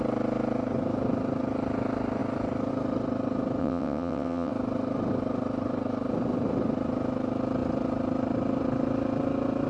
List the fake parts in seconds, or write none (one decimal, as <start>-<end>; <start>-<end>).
3.6-4.5